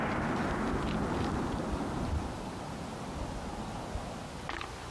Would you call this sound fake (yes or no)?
no